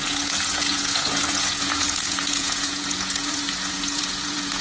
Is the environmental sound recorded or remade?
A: remade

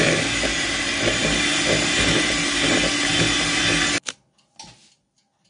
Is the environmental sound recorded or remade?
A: recorded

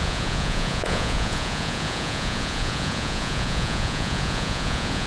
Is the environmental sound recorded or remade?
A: remade